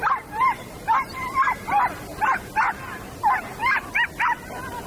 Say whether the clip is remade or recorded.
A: recorded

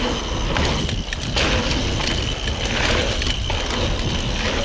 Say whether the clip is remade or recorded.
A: recorded